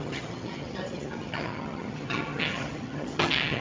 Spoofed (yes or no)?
yes